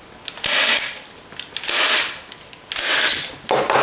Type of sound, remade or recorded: recorded